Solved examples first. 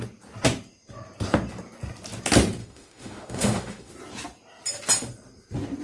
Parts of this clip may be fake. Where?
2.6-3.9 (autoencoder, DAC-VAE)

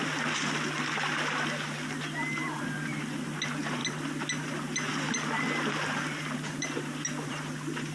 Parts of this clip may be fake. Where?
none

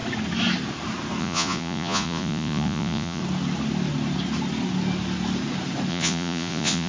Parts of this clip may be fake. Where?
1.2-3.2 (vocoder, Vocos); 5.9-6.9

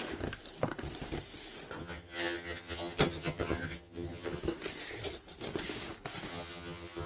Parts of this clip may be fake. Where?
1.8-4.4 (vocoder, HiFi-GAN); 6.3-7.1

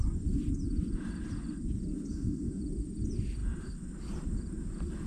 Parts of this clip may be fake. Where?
2.1-2.6 (autoencoder, DAC-VAE)

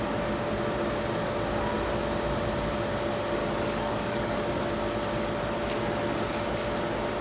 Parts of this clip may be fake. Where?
3.4-4.6 (codec, DAC)